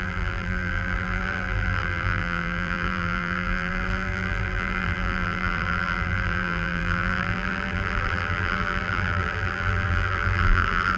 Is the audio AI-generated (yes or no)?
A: yes